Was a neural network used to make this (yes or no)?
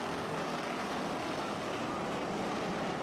no